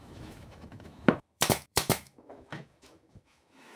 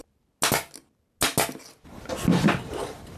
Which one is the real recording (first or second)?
second